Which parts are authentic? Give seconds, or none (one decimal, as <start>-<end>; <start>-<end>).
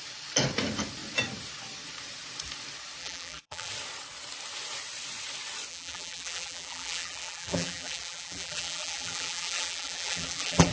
0.0-3.0; 3.7-5.7